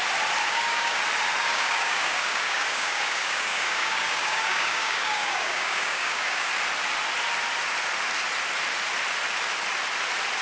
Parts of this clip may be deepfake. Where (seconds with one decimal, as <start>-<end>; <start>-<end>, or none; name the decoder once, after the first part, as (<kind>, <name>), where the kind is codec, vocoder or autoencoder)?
0.4-1.0 (codec, DAC); 1.5-6.5